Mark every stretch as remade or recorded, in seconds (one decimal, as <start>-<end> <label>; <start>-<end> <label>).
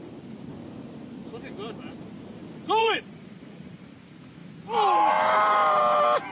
0.0-2.8 recorded; 2.8-3.7 remade; 3.7-6.3 recorded